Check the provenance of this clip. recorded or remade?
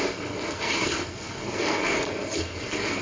remade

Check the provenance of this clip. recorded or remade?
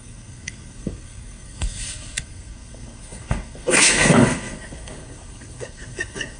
remade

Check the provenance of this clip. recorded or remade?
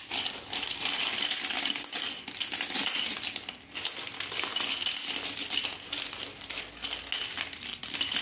recorded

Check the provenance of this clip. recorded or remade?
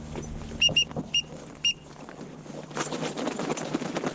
recorded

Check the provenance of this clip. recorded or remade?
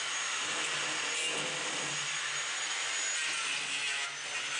recorded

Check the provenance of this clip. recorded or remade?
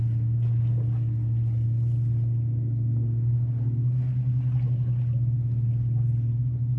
recorded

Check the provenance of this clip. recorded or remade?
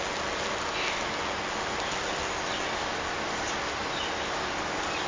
recorded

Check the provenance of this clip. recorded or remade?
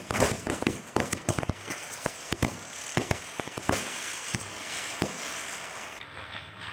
remade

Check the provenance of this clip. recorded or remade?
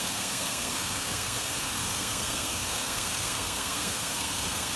remade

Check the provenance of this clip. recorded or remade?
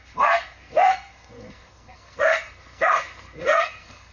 remade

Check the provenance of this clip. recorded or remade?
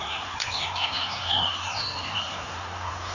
remade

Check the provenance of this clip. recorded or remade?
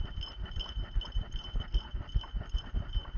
recorded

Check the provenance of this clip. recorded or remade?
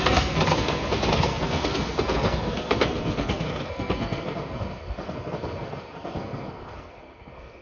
remade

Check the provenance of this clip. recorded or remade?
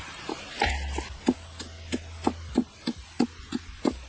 recorded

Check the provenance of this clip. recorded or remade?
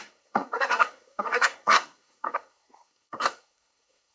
remade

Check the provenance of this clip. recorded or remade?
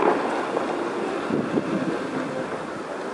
recorded